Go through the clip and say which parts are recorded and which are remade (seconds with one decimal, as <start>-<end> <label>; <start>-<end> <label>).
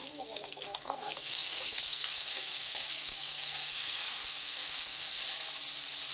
0.0-5.2 remade; 5.2-6.1 recorded